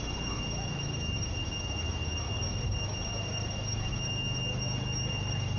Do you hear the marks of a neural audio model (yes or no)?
yes